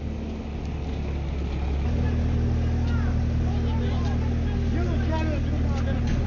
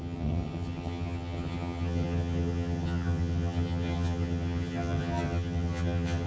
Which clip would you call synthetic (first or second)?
second